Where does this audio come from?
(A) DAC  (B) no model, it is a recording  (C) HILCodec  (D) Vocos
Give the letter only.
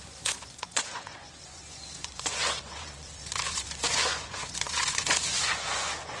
D